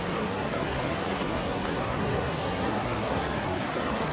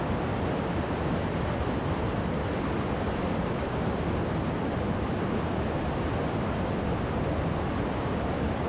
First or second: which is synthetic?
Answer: first